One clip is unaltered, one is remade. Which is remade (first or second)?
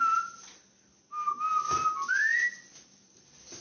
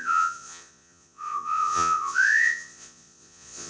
second